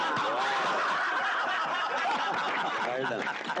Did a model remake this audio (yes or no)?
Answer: no